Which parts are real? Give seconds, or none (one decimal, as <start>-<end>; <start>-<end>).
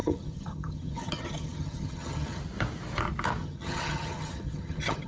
2.4-3.4